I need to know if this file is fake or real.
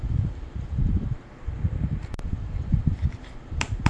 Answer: fake